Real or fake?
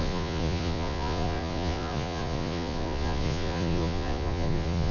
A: fake